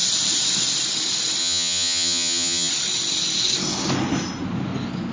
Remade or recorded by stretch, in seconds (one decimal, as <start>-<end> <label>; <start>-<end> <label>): 0.0-1.4 recorded; 1.4-2.7 remade; 2.7-5.1 recorded